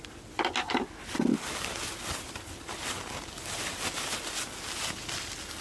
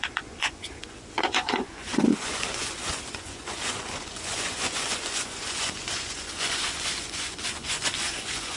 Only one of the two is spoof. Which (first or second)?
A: second